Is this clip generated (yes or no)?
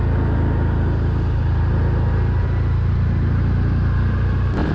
no